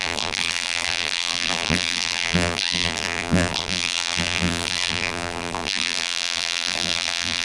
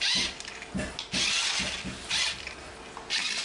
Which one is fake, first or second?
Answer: first